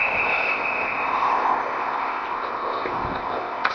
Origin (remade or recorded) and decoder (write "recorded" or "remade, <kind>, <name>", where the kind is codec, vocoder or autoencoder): remade, codec, ZipCodec